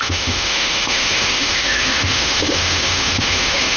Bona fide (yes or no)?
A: no